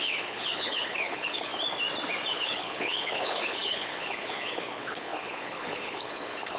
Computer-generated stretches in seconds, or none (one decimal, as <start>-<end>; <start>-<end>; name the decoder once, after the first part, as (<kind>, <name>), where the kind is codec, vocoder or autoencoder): 0.0-1.5 (codec, HILCodec); 2.3-6.6